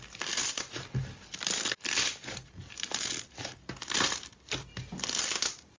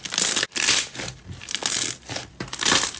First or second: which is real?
second